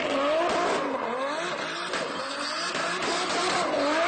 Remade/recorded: recorded